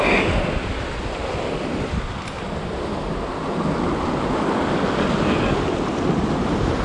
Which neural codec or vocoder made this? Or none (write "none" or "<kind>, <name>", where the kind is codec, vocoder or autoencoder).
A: none